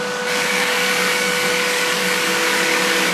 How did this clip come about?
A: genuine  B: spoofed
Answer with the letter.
B